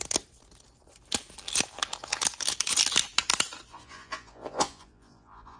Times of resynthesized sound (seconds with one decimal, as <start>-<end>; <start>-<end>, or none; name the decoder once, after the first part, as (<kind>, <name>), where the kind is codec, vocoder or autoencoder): 3.7-5.6 (vocoder, Vocos)